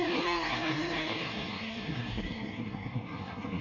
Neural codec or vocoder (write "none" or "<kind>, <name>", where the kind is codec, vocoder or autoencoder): codec, SNAC